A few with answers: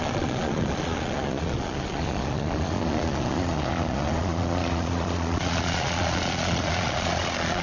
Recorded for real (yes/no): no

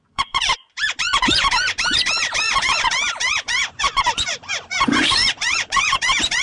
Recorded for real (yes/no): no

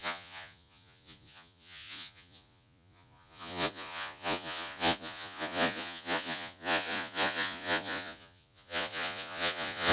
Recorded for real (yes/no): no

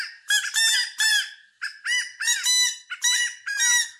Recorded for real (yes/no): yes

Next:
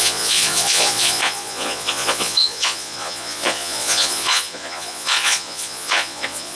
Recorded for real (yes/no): no